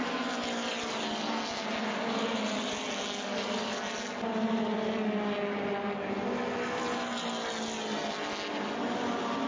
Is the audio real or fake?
real